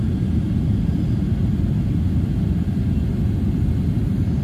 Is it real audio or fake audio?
real